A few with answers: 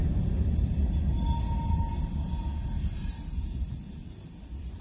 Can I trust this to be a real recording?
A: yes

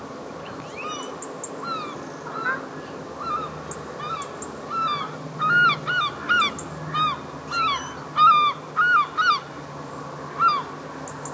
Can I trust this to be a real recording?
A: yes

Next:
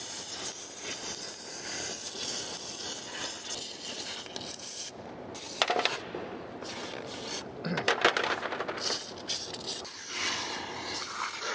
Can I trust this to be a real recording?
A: yes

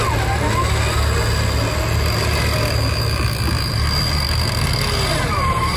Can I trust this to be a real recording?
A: yes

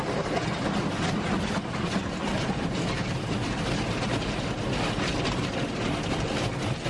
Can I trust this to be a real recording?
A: yes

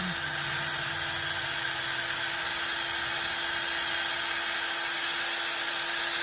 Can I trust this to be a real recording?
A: yes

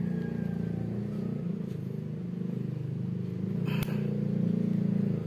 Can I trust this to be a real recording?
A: yes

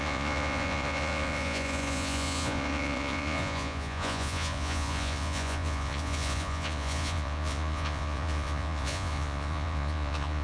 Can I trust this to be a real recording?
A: no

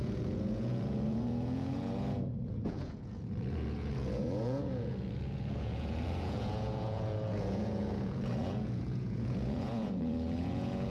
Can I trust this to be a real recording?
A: no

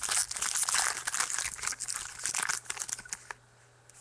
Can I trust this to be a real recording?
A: yes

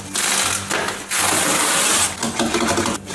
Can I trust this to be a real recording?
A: yes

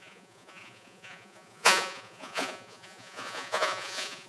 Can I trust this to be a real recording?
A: no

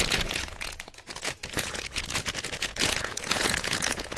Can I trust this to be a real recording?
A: no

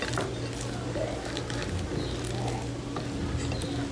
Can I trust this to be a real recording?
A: yes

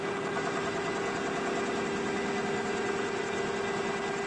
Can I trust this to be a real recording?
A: yes